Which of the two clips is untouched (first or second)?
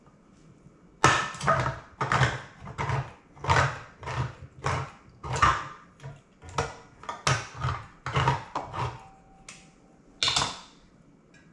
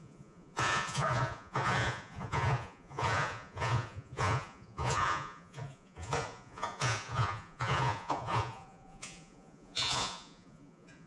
first